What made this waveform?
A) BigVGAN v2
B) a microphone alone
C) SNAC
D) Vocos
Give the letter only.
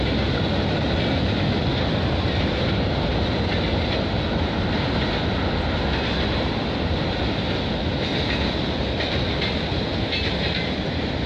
B